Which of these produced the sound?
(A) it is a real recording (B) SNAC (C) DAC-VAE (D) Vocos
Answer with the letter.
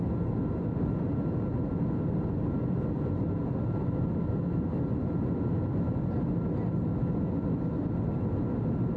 A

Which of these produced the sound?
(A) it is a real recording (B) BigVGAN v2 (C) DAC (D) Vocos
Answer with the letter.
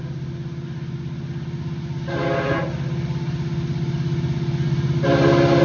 A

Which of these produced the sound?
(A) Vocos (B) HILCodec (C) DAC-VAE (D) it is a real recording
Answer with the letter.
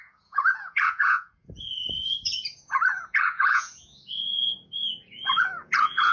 A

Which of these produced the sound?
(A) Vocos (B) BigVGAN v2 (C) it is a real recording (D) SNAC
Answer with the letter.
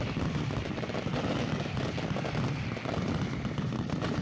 C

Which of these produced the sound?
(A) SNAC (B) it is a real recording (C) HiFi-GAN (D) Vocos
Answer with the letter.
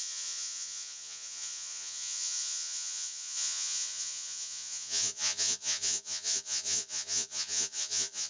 D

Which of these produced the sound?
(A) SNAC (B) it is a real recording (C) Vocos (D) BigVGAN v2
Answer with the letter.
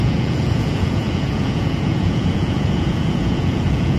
C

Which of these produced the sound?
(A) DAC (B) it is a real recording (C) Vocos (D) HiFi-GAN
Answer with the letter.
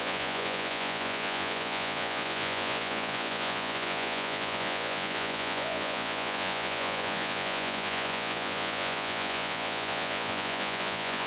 C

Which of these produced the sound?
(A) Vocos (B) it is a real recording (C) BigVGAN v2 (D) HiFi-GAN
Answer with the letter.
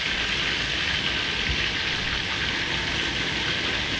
B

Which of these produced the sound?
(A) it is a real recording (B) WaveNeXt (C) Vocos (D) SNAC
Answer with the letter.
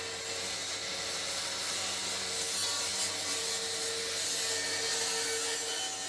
A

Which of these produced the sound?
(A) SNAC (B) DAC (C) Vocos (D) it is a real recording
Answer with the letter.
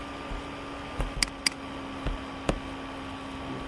D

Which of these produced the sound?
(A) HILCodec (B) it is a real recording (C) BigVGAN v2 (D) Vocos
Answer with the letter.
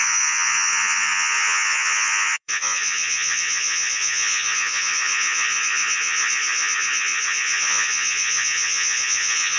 D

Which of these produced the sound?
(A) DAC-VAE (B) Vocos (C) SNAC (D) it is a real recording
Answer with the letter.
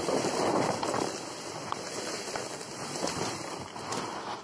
D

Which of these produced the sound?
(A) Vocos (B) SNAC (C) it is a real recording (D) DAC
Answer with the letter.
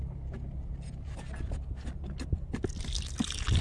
C